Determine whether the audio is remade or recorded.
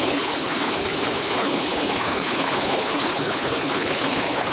remade